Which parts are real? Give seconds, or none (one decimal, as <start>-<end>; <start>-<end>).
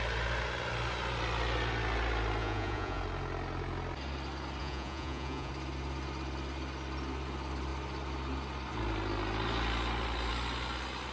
0.0-2.4; 3.0-4.6; 5.5-11.1